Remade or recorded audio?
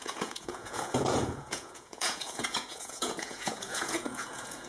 remade